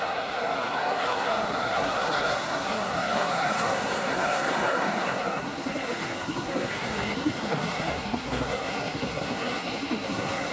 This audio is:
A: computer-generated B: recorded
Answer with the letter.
A